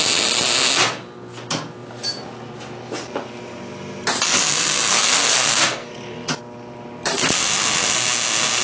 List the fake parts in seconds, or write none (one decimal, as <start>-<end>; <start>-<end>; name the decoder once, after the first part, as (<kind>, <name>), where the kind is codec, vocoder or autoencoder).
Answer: 4.9-5.9 (codec, SNAC)